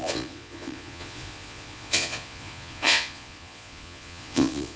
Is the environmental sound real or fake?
fake